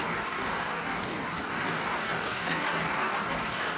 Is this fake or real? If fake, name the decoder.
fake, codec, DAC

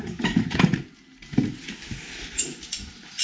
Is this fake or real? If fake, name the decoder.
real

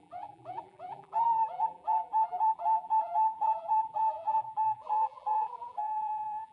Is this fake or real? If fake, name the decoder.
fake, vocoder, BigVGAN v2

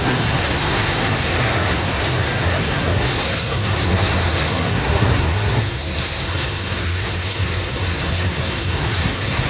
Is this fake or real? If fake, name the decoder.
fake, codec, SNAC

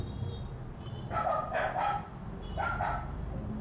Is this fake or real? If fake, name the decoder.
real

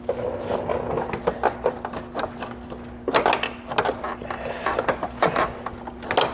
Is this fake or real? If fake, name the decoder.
real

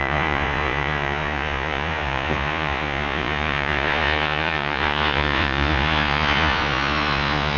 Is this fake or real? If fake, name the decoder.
fake, vocoder, Vocos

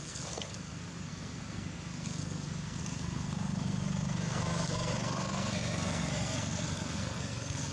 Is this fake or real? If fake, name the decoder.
fake, codec, SNAC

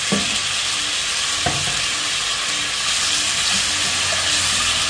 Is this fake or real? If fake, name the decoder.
real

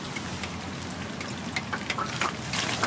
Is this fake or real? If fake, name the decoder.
real